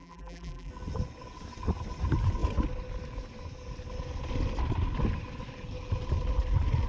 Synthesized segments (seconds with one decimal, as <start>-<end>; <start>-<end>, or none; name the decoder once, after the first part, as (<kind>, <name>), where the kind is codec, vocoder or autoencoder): 0.0-0.7 (vocoder, BigVGAN v2)